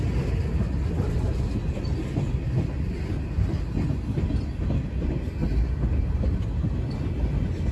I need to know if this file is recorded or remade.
recorded